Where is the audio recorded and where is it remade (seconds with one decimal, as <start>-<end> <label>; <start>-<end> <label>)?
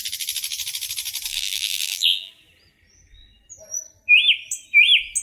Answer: 0.0-1.3 recorded; 1.3-2.3 remade; 2.3-5.2 recorded